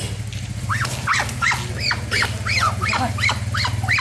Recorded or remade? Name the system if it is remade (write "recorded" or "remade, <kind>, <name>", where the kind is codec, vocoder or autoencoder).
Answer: recorded